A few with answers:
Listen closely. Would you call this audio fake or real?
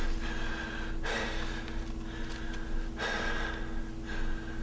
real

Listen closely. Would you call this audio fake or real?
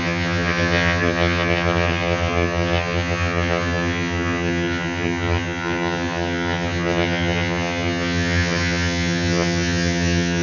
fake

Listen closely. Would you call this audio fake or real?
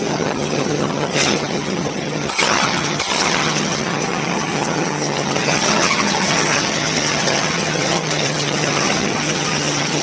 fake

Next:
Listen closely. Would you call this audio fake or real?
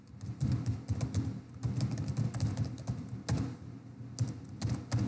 real